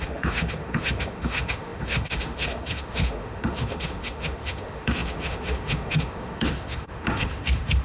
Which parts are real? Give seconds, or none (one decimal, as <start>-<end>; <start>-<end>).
none